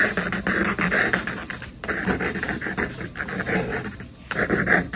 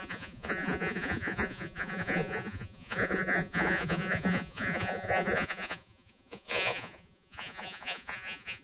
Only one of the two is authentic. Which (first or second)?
first